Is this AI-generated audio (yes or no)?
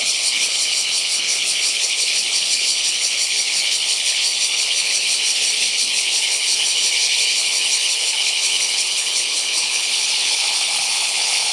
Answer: yes